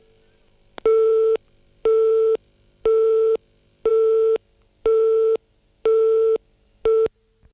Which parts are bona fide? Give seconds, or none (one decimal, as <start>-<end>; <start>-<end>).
0.0-7.5